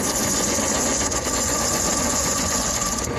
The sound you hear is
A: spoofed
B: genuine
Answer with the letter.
A